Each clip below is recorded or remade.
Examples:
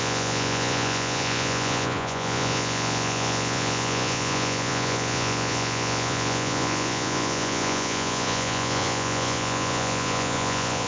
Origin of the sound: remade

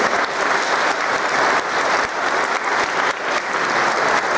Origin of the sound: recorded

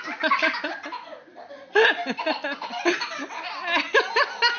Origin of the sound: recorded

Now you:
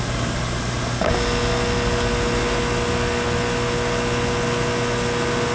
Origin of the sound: recorded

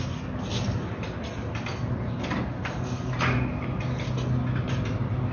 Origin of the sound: recorded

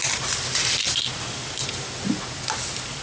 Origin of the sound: recorded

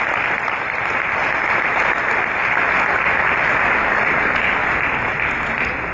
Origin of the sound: recorded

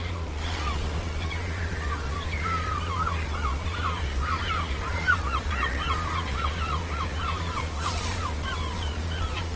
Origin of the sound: remade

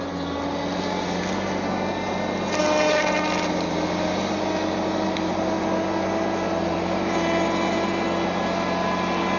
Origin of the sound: recorded